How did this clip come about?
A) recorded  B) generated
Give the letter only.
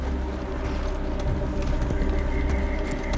A